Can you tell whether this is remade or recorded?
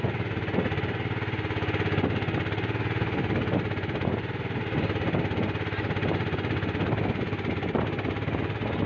recorded